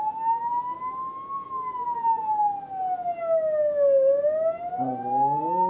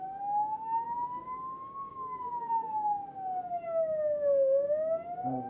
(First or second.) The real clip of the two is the first